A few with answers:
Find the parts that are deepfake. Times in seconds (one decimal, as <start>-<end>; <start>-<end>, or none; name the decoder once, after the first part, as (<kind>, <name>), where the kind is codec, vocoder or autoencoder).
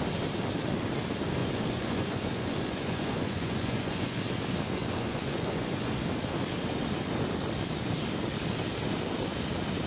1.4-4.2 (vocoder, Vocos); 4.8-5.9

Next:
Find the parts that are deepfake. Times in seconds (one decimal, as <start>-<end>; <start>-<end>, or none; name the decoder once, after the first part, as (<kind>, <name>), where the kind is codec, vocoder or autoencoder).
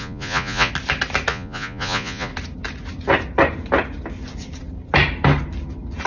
0.0-0.7 (vocoder, Vocos); 1.3-2.3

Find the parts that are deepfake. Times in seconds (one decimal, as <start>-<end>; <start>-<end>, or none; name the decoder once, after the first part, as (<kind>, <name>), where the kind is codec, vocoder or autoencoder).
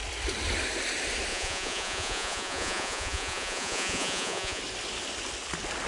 1.3-4.6 (vocoder, Vocos)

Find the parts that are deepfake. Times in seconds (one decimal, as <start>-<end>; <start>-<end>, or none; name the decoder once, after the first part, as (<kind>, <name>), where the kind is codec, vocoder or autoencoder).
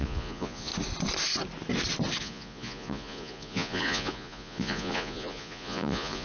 0.0-0.7 (vocoder, Vocos); 2.2-6.2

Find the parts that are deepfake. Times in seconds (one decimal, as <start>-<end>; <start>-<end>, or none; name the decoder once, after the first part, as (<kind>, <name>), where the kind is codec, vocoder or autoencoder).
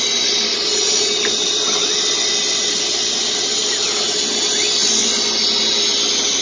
0.5-1.1 (vocoder, Vocos)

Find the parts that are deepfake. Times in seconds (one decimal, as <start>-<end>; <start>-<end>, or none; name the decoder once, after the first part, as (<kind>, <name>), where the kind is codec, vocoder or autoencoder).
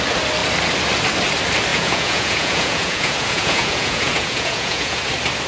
1.7-5.0 (vocoder, Vocos)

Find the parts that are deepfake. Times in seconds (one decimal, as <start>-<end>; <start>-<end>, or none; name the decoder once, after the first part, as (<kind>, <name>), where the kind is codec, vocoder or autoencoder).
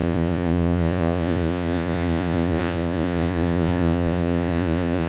0.0-5.1 (vocoder, Vocos)